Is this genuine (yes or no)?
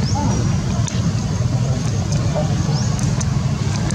yes